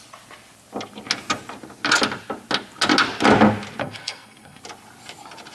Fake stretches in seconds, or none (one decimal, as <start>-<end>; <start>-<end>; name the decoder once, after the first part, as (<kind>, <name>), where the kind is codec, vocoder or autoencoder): 3.8-4.6 (codec, SNAC)